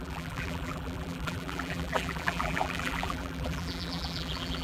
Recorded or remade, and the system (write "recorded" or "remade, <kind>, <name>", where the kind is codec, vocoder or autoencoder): remade, vocoder, BigVGAN v2